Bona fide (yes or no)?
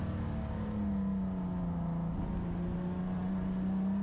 yes